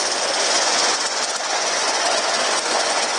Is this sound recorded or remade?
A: remade